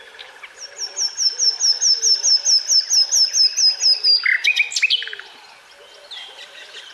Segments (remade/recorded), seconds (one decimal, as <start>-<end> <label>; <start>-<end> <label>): 0.0-6.9 recorded